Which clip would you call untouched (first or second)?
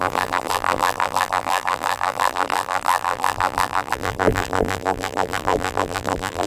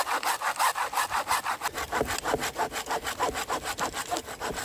second